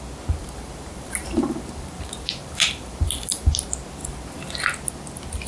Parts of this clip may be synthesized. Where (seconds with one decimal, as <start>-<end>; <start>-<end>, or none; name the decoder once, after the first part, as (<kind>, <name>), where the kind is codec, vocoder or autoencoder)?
0.4-3.5 (vocoder, BigVGAN v2)